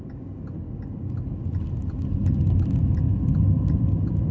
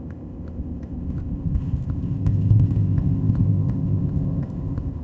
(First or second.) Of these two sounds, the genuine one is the first